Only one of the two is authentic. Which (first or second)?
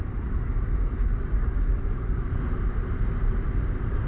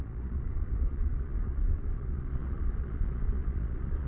first